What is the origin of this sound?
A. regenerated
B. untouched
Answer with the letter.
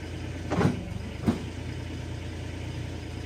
B